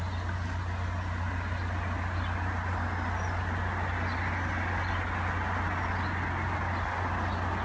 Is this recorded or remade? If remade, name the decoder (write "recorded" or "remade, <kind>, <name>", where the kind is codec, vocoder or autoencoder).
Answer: recorded